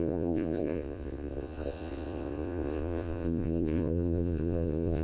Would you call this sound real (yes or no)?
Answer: no